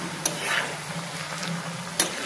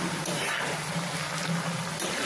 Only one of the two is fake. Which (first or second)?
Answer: second